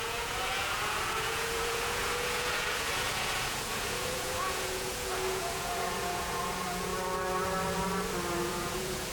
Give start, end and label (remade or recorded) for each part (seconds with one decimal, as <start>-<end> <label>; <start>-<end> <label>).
0.0-6.9 remade; 6.9-8.4 recorded; 8.4-9.1 remade